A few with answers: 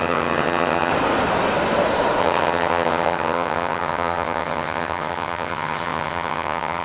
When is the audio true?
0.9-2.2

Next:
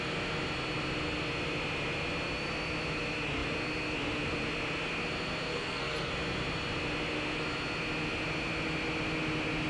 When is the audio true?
0.0-5.5; 6.1-9.7

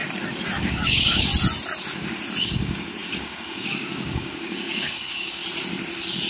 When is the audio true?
0.0-0.6; 1.3-2.4; 5.4-6.3

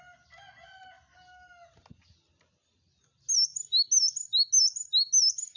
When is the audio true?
0.0-5.6

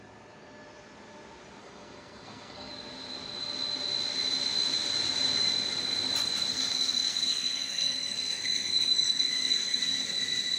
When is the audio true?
0.0-1.6; 2.7-6.5; 9.8-10.6

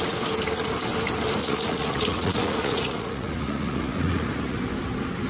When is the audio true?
0.0-1.4; 4.6-5.3